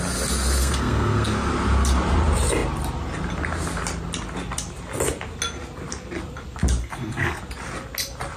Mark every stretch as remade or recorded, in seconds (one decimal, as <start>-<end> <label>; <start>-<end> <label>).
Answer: 0.0-0.6 recorded; 0.6-1.5 remade; 1.5-6.8 recorded; 6.8-7.4 remade; 7.4-8.4 recorded